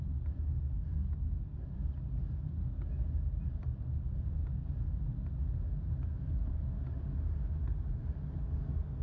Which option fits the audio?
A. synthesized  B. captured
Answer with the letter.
B